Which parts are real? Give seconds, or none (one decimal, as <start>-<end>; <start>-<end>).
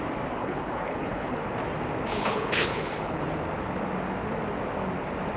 0.0-0.4; 1.4-2.1; 3.2-5.4